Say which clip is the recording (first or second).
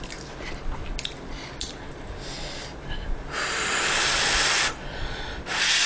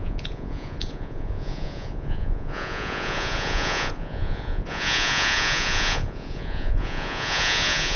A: first